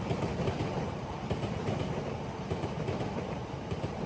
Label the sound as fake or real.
fake